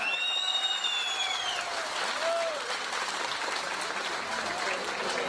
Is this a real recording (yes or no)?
yes